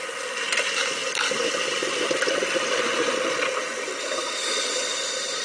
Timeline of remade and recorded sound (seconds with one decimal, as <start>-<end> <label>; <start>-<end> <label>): 0.0-1.0 recorded; 1.0-4.2 remade; 4.2-5.4 recorded